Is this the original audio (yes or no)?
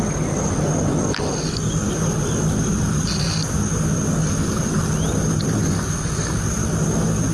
yes